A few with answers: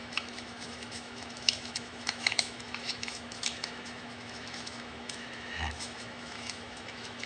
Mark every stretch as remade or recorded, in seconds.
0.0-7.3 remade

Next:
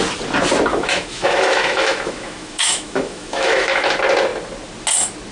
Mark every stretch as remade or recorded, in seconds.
0.0-0.7 recorded; 0.7-3.9 remade; 3.9-5.3 recorded

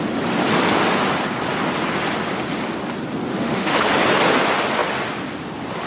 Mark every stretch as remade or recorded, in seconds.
0.0-3.3 recorded; 3.3-3.9 remade; 3.9-5.9 recorded

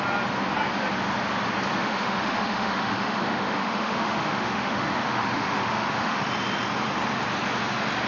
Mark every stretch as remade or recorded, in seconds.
0.0-1.8 recorded; 1.8-6.2 remade; 6.2-8.1 recorded